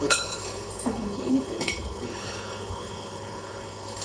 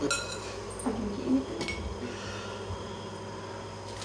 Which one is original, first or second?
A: second